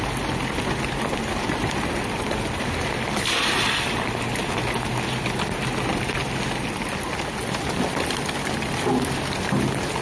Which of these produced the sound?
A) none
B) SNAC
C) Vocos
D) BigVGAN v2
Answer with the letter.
A